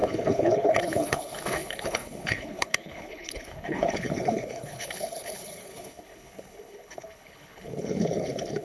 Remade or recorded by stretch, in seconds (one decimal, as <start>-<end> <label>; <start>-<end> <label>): 0.0-8.6 remade

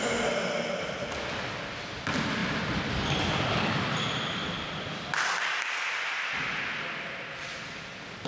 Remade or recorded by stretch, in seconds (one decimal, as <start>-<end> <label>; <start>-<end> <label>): 0.0-8.3 recorded

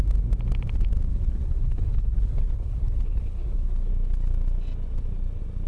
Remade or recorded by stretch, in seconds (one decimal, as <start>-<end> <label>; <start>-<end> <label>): 0.0-1.1 recorded; 1.1-3.9 remade; 3.9-5.7 recorded

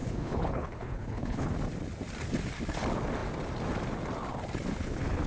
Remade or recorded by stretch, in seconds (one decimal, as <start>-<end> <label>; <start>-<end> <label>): 0.0-1.5 remade; 1.5-4.7 recorded; 4.7-5.3 remade